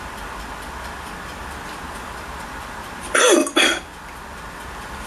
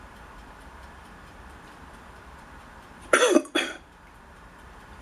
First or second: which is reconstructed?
second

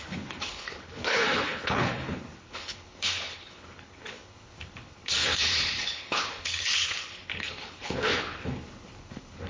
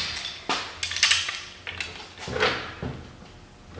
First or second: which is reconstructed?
first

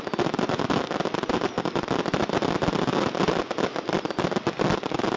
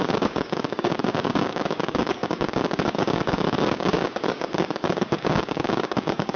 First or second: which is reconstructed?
second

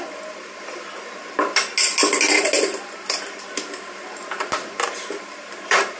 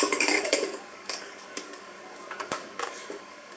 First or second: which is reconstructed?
second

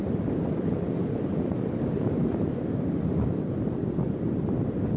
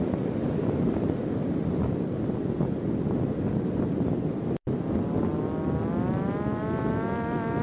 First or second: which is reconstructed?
first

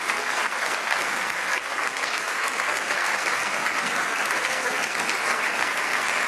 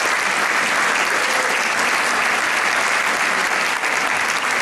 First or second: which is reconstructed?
first